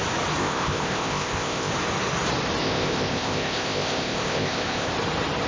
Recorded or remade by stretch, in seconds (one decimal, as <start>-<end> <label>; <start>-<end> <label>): 0.0-0.4 recorded; 0.4-1.7 remade; 1.7-2.6 recorded; 2.6-4.9 remade; 4.9-5.5 recorded